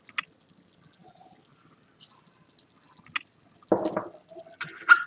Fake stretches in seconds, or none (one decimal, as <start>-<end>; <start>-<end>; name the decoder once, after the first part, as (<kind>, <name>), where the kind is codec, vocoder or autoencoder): none